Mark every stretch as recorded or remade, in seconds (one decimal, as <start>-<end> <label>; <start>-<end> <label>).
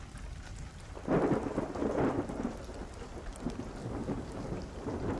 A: 0.0-3.8 recorded; 3.8-4.5 remade; 4.5-5.2 recorded